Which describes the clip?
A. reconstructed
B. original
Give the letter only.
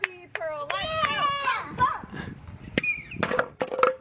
B